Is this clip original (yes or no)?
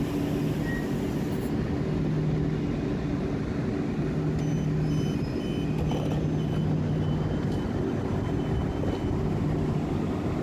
yes